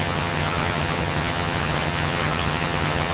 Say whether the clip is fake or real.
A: fake